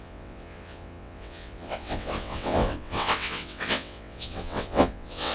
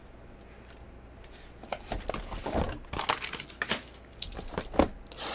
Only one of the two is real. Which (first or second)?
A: second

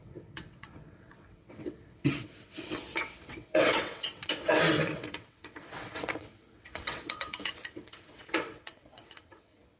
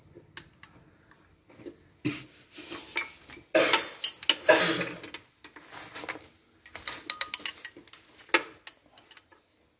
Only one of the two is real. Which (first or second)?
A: second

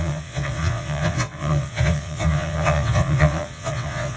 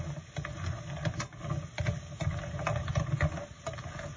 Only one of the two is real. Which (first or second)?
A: second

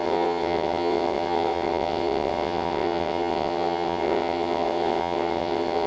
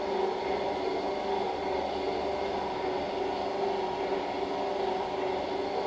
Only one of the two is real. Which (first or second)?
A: second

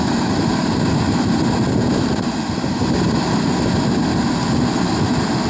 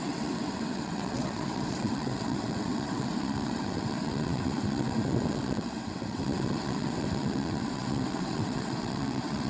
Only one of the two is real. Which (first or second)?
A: first